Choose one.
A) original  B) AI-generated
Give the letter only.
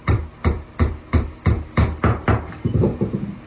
A